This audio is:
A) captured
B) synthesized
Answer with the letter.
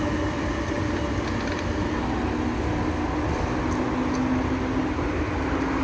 A